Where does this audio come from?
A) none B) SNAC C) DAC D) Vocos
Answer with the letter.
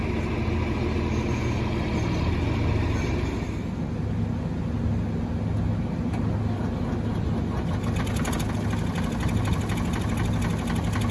A